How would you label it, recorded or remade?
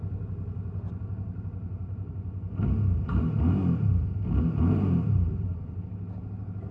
recorded